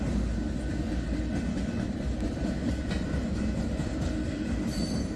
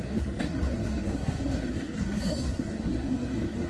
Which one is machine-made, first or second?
second